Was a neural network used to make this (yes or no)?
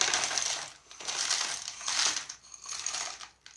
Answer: no